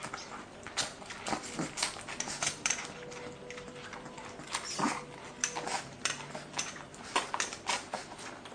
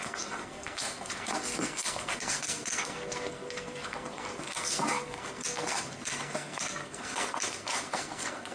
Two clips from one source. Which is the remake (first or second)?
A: second